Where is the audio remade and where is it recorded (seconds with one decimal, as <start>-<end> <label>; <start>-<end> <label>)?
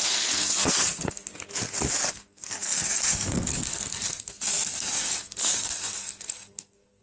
0.0-1.3 remade; 1.3-2.1 recorded; 2.1-7.0 remade